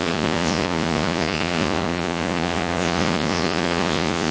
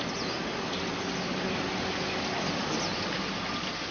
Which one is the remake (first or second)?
first